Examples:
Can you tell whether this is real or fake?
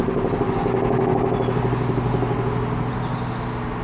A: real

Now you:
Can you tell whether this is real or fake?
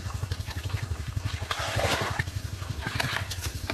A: fake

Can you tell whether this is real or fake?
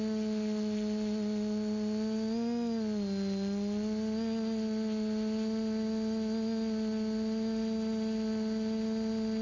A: real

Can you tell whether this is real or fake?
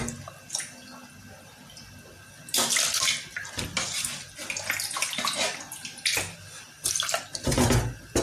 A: real